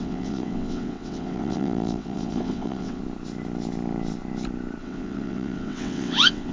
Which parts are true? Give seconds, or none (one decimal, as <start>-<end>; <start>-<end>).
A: 3.0-4.8